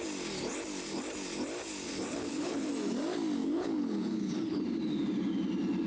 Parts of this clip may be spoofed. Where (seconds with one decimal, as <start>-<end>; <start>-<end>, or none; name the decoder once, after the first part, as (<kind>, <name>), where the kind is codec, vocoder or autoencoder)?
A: 2.1-2.7 (codec, HILCodec); 3.4-4.6